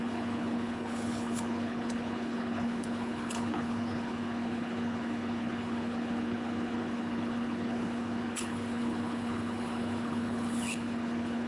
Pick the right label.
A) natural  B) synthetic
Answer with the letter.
B